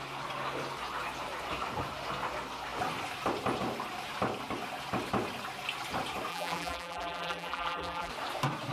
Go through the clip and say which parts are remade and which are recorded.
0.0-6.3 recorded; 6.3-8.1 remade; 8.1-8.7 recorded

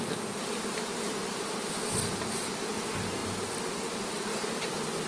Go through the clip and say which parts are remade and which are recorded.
0.0-5.1 recorded

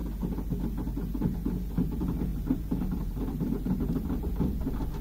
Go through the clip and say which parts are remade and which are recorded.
0.0-2.3 recorded; 2.3-4.4 remade; 4.4-5.0 recorded